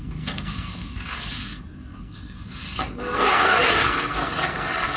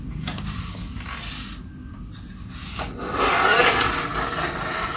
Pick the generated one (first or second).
first